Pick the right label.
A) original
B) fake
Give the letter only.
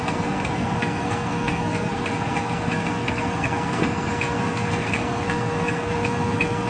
B